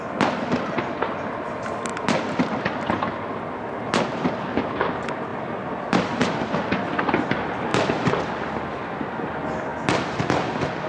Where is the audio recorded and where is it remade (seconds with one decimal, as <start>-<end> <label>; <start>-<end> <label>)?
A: 0.0-1.9 remade; 1.9-4.3 recorded; 4.3-10.9 remade